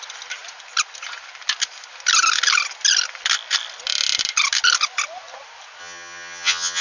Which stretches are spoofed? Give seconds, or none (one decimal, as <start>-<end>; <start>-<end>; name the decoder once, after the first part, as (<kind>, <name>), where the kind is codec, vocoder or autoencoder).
5.8-6.8 (vocoder, HiFi-GAN)